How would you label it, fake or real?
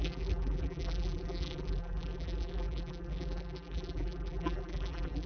fake